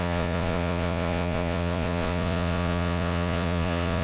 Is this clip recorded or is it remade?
remade